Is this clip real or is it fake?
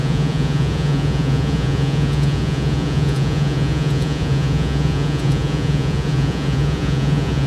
fake